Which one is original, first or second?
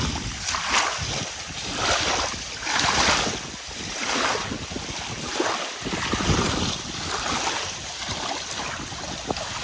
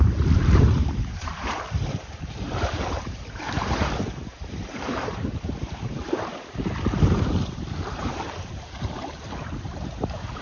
first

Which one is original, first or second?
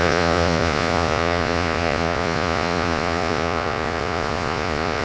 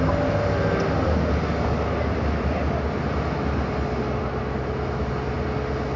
second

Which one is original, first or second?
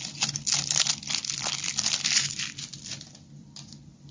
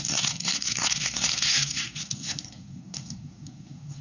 first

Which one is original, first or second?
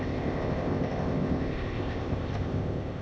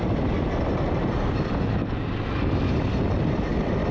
second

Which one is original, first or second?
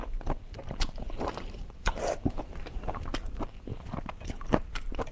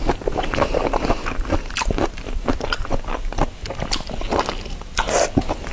second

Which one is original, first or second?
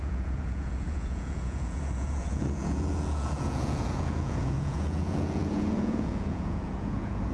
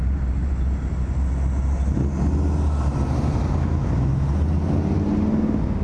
second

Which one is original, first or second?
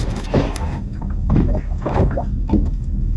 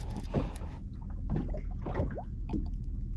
second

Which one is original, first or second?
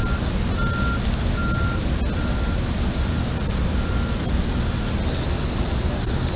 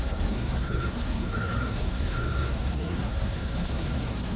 first